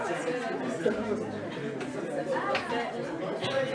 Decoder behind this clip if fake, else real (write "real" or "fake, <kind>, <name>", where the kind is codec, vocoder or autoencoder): real